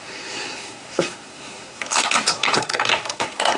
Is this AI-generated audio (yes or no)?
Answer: yes